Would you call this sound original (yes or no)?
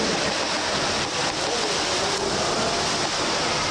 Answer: yes